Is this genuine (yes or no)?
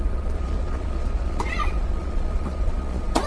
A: no